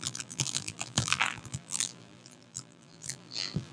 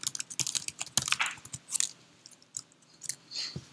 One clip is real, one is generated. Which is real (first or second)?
second